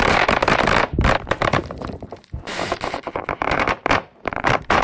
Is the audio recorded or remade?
remade